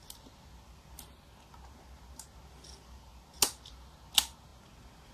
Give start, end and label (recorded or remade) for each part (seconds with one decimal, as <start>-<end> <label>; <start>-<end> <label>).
0.0-5.1 recorded